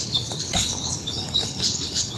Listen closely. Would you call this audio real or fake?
fake